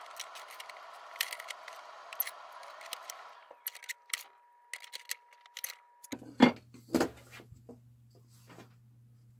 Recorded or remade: recorded